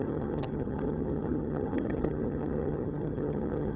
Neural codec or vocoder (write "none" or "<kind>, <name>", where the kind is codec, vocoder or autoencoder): vocoder, HiFi-GAN